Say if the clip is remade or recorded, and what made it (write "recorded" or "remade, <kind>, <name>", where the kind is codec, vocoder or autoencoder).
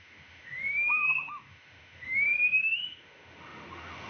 remade, autoencoder, DAC-VAE